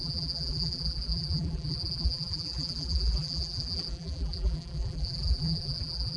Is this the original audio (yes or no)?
no